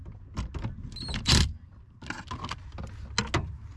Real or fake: real